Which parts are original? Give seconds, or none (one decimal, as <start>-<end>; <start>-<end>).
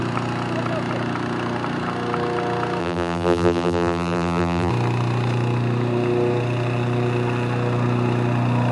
0.0-2.8; 4.7-8.7